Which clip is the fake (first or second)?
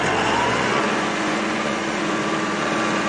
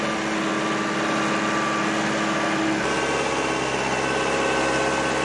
first